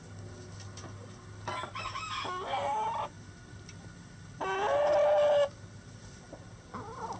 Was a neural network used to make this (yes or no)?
no